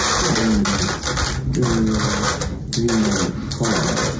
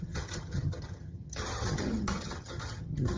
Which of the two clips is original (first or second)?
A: first